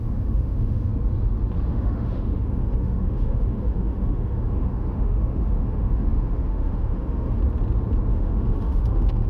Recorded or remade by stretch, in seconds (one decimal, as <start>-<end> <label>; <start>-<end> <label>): 0.0-0.9 remade; 0.9-1.7 recorded; 1.7-7.4 remade; 7.4-8.1 recorded; 8.1-9.3 remade